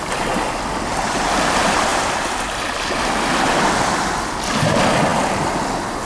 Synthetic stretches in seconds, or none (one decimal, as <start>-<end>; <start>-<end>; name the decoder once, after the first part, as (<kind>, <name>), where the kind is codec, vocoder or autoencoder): none

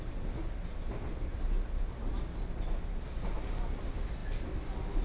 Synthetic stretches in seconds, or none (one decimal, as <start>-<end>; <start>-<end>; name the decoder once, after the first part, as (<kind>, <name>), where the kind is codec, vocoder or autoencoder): none

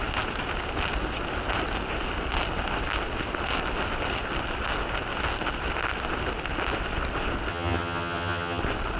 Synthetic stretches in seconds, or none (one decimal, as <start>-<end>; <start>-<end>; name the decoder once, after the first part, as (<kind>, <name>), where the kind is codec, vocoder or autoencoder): 7.5-8.6 (vocoder, HiFi-GAN)

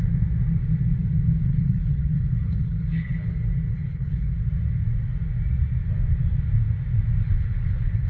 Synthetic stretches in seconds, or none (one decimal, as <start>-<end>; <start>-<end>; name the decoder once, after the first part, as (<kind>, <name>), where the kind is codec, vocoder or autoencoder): 1.4-3.3 (codec, HILCodec); 3.7-4.3; 7.2-8.1

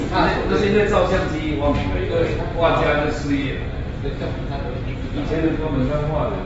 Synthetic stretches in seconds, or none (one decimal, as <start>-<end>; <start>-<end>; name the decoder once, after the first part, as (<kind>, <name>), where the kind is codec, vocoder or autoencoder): 2.5-3.5 (vocoder, BigVGAN v2); 4.0-5.7

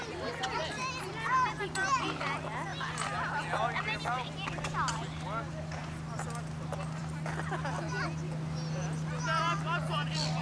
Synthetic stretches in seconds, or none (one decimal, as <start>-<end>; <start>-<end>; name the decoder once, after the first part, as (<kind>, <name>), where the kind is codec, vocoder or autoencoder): none

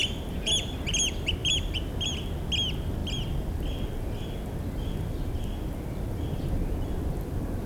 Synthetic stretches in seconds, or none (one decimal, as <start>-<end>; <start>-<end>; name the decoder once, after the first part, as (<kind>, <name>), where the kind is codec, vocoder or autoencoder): none